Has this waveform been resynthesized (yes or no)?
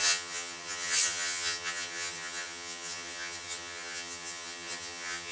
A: yes